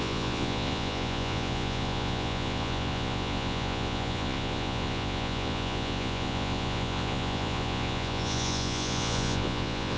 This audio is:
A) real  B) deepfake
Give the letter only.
B